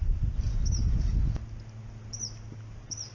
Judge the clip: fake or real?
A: real